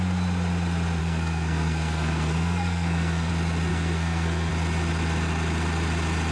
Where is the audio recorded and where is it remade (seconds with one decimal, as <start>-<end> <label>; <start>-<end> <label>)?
0.0-1.0 recorded; 1.0-3.3 remade; 3.3-3.7 recorded; 3.7-4.5 remade; 4.5-6.3 recorded

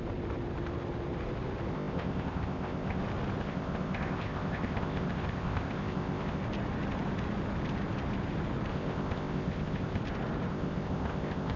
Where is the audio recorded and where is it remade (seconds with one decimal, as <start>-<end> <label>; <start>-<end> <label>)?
0.0-1.7 recorded; 1.7-3.0 remade; 3.0-3.4 recorded; 3.4-6.4 remade; 6.4-8.7 recorded; 8.7-10.0 remade; 10.0-10.5 recorded; 10.5-11.6 remade

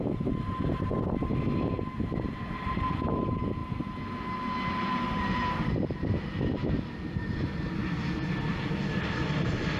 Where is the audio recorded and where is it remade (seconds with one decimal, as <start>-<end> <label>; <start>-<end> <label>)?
0.0-3.6 remade; 3.6-5.2 recorded; 5.2-7.8 remade; 7.8-9.0 recorded; 9.0-9.8 remade

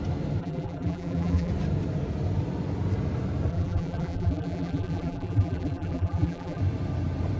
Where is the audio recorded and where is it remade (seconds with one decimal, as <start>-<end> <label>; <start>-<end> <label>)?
0.0-0.4 recorded; 0.4-1.5 remade; 1.5-3.5 recorded; 3.5-6.6 remade; 6.6-7.4 recorded

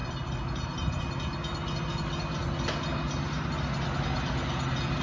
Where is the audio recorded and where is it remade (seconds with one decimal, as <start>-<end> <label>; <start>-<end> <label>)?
0.0-1.0 remade; 1.0-5.0 recorded

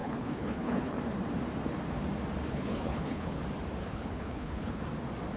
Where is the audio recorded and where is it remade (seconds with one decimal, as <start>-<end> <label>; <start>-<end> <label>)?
0.0-1.0 remade; 1.0-2.5 recorded; 2.5-3.4 remade; 3.4-3.8 recorded; 3.8-4.8 remade; 4.8-5.4 recorded

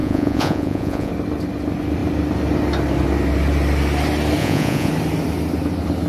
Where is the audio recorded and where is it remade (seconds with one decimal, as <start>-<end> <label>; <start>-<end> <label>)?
0.0-1.1 remade; 1.1-4.4 recorded; 4.4-4.9 remade; 4.9-6.1 recorded